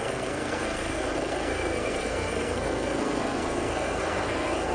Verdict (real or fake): fake